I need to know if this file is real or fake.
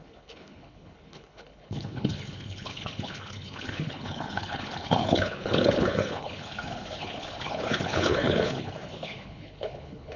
fake